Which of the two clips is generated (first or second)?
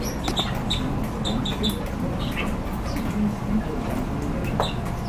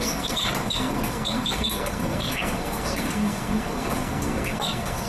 second